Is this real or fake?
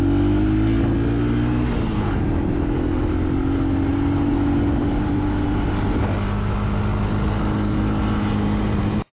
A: real